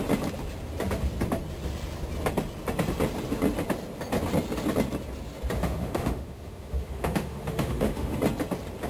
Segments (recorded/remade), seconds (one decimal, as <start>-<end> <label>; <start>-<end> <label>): 0.0-5.6 recorded; 5.6-8.2 remade; 8.2-8.9 recorded